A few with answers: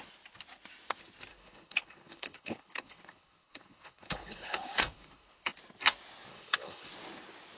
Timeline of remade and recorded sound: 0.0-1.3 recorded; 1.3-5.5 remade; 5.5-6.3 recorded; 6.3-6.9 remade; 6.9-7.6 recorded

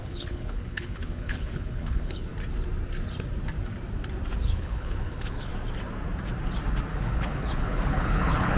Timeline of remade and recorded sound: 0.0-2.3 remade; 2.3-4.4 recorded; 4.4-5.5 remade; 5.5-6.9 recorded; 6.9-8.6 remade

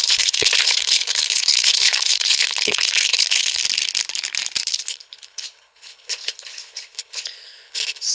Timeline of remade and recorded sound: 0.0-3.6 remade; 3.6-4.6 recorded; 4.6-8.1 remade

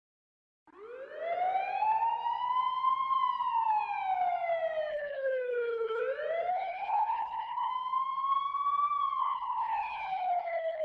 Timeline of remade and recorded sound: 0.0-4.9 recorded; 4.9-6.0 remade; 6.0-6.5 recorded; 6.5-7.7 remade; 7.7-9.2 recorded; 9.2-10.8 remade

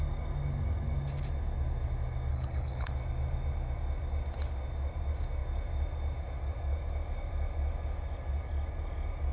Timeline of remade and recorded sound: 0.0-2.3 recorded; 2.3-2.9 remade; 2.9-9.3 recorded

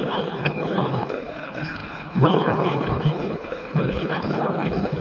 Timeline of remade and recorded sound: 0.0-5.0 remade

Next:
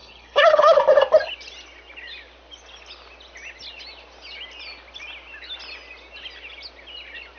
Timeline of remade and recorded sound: 0.0-0.8 remade; 0.8-7.4 recorded

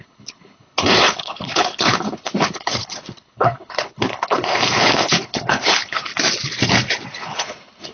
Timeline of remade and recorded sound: 0.0-6.1 remade; 6.1-7.1 recorded; 7.1-7.9 remade